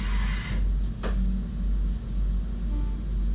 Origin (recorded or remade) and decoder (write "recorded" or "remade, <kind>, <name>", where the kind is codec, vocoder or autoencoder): recorded